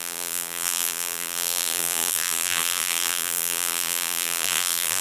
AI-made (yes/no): yes